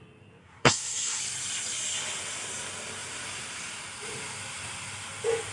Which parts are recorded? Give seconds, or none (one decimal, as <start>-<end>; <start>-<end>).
0.0-0.4; 1.2-5.5